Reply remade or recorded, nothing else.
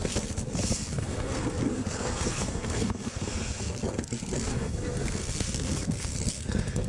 remade